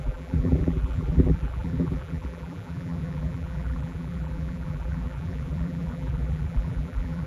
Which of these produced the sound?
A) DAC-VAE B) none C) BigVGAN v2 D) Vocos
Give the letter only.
C